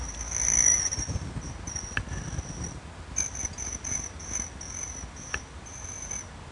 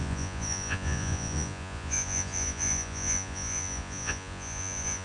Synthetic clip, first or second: second